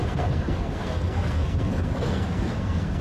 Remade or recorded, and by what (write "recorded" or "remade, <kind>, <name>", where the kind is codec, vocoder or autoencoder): remade, codec, SNAC